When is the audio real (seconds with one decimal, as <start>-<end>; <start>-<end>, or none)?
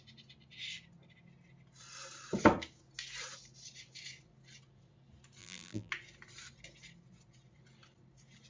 0.0-5.4; 5.9-8.5